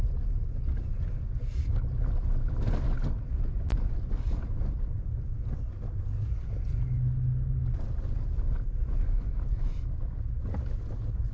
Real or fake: real